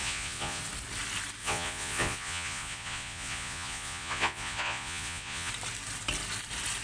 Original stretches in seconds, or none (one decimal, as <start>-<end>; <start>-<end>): 0.6-1.4; 5.5-6.8